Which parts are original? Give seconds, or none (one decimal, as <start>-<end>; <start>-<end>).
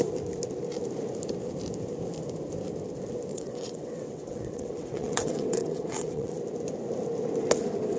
0.0-3.3; 6.4-8.0